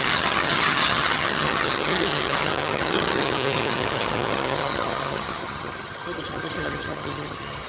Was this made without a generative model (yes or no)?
no